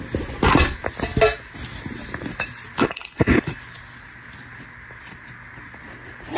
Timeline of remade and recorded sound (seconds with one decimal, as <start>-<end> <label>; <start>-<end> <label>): 0.0-2.8 recorded; 2.8-3.4 remade; 3.4-6.4 recorded

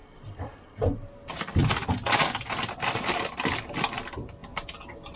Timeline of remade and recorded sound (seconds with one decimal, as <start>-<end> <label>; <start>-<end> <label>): 0.0-5.2 recorded

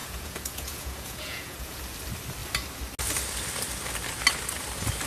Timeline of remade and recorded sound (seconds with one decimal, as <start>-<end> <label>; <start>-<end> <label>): 0.0-1.8 remade; 1.8-5.1 recorded